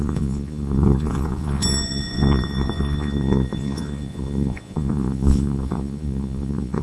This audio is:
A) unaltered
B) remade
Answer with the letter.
B